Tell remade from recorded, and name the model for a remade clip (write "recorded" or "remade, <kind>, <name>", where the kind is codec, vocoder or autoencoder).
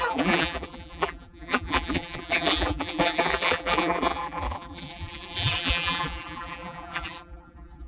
remade, vocoder, BigVGAN v2